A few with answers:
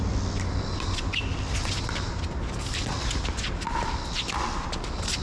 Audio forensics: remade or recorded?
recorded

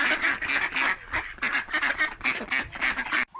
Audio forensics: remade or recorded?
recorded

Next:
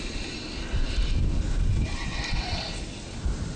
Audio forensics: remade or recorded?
recorded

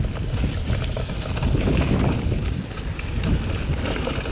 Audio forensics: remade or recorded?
recorded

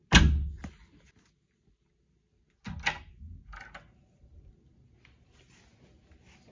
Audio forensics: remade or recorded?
recorded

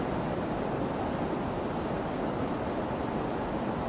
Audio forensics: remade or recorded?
recorded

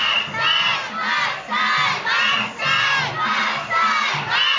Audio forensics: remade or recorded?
recorded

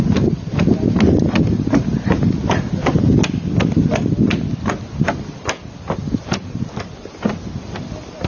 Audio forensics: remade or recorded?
recorded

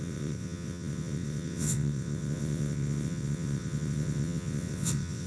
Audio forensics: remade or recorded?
remade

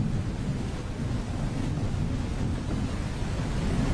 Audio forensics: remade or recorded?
recorded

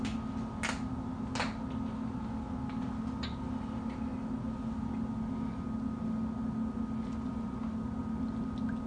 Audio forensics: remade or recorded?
recorded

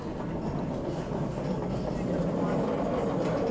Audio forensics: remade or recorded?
recorded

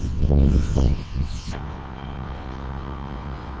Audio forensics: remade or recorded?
remade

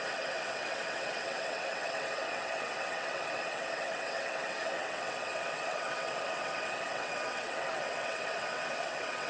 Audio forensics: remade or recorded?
remade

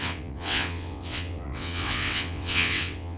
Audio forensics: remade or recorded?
remade